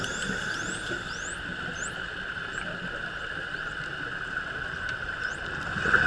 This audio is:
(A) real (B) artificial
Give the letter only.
A